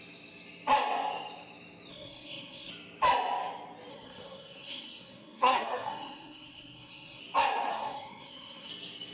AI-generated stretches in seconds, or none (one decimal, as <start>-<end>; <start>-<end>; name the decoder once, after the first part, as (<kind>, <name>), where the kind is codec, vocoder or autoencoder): 1.9-2.7 (codec, SNAC); 3.9-7.2; 7.7-8.7